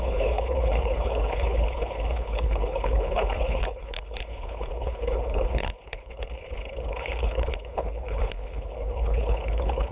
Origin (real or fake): fake